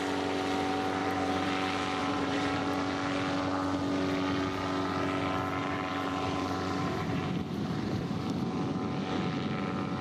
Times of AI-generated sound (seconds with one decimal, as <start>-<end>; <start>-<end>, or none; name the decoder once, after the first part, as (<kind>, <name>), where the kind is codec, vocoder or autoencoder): 1.0-1.5 (vocoder, BigVGAN v2); 2.0-2.6; 5.6-8.5